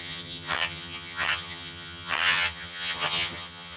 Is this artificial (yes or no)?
yes